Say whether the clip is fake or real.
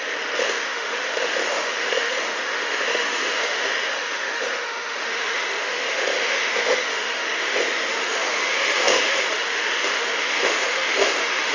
fake